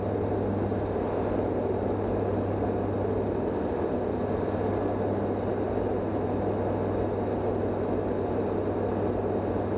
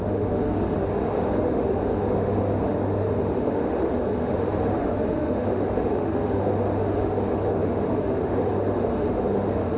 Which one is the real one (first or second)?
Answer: first